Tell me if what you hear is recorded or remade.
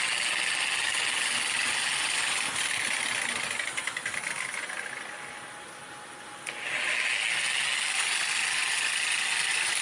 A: recorded